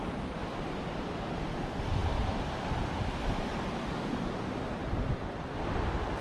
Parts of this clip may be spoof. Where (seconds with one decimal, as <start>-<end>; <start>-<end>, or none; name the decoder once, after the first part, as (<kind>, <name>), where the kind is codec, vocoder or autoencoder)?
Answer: 0.4-1.3 (vocoder, BigVGAN v2); 4.8-5.5